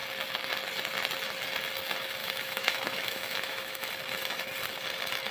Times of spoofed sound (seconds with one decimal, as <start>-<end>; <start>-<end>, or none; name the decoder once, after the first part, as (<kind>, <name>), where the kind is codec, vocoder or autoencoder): 2.2-3.9 (autoencoder, DAC-VAE)